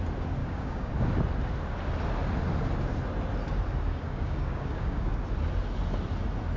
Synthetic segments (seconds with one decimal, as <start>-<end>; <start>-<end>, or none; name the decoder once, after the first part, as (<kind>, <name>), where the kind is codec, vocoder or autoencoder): 0.4-0.9 (codec, DAC); 3.9-5.1